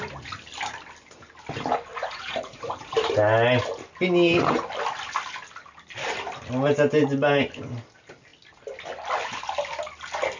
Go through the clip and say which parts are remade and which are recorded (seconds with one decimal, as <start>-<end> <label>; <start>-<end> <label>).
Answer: 0.0-1.9 recorded; 1.9-2.6 remade; 2.6-10.4 recorded